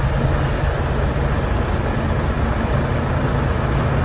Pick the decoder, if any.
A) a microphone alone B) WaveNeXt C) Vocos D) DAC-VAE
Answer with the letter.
A